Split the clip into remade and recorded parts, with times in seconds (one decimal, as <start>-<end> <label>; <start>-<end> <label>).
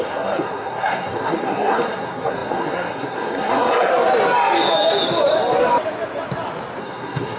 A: 0.0-3.9 remade; 3.9-6.8 recorded; 6.8-7.4 remade